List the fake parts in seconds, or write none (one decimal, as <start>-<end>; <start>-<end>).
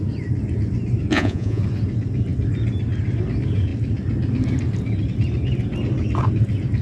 1.1-1.6